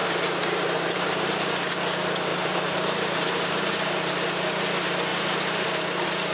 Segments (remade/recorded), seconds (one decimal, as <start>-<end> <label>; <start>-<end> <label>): 0.0-1.3 remade; 1.3-2.3 recorded; 2.3-4.1 remade; 4.1-5.1 recorded; 5.1-5.8 remade; 5.8-6.3 recorded